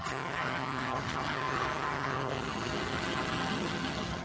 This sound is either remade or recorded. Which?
remade